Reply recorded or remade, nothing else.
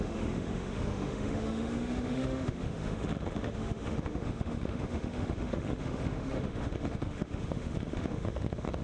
remade